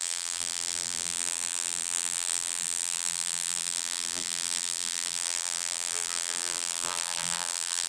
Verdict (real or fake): fake